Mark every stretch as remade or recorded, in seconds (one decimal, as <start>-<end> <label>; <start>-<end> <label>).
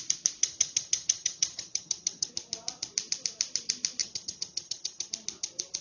0.0-0.4 recorded; 0.4-2.3 remade; 2.3-4.0 recorded; 4.0-5.1 remade; 5.1-5.8 recorded